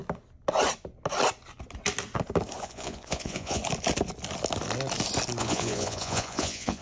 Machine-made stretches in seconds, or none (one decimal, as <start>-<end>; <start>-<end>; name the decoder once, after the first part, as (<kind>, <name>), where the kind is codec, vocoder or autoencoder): 2.6-3.6 (vocoder, Vocos); 5.4-6.8